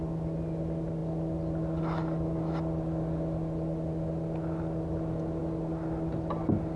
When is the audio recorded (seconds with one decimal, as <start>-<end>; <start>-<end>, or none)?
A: 0.0-6.8